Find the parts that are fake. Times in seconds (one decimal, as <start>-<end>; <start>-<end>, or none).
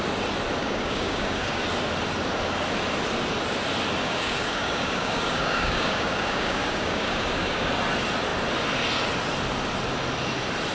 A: 0.6-1.6; 4.0-7.7